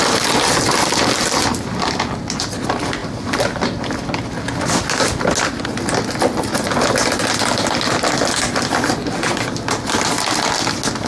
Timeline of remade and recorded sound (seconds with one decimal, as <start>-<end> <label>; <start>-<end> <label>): 0.0-11.1 recorded